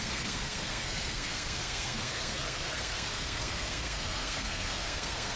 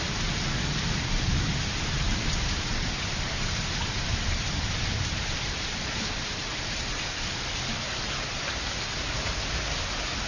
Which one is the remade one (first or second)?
first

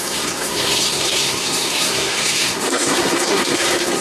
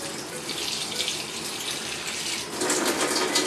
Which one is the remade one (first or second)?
first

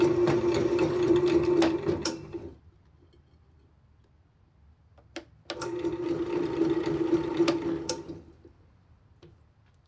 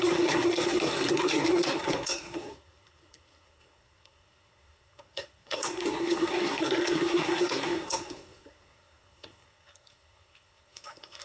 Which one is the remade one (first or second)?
second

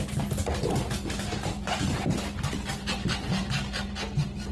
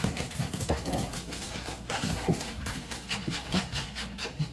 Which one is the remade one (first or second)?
second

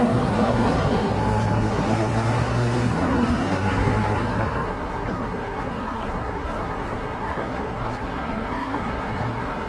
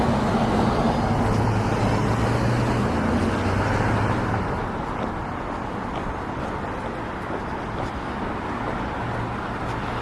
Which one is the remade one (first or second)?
first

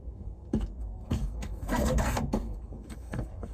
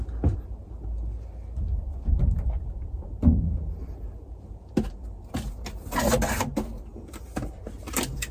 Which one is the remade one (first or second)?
first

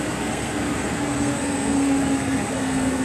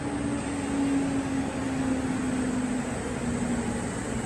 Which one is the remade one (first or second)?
first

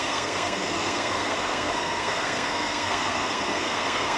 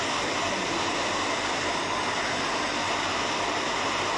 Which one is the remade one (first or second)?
first